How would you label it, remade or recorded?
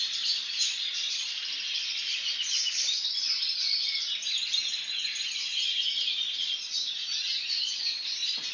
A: recorded